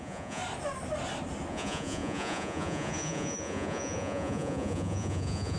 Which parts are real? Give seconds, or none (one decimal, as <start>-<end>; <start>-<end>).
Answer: 0.4-1.5